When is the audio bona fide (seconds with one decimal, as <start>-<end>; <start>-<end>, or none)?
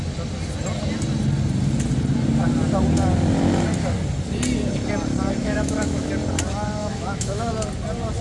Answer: 0.0-5.4; 6.1-6.8; 7.5-8.2